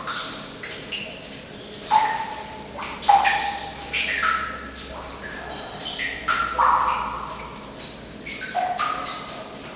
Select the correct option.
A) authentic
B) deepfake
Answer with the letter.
A